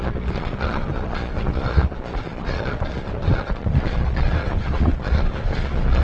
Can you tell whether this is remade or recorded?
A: remade